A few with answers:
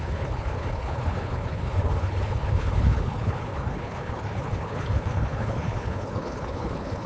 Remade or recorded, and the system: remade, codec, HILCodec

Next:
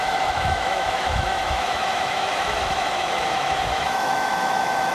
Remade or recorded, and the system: remade, autoencoder, DAC-VAE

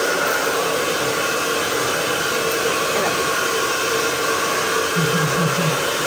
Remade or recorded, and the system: recorded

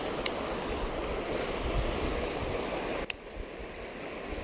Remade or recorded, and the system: recorded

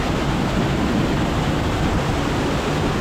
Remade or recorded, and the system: recorded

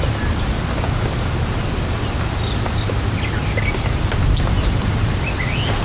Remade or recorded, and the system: recorded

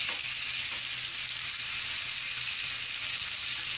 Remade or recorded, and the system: recorded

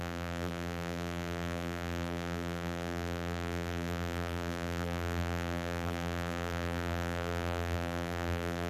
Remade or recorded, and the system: remade, vocoder, BigVGAN v2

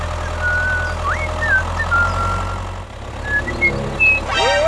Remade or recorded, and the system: recorded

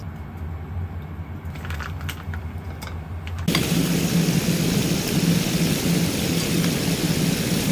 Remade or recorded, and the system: recorded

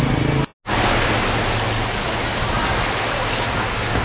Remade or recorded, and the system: recorded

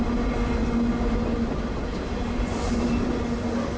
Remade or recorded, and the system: recorded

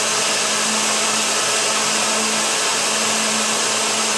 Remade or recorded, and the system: recorded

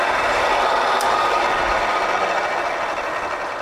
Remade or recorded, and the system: recorded